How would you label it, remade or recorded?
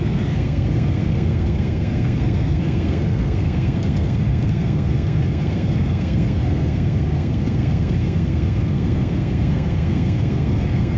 remade